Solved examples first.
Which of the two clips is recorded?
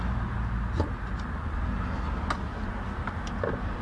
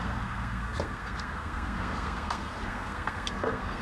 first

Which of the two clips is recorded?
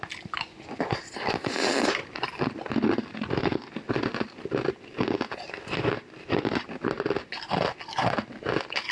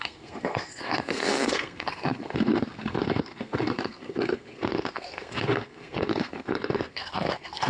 first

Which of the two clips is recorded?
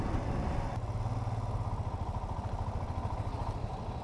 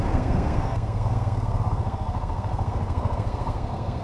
first